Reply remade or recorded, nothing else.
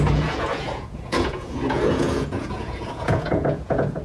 remade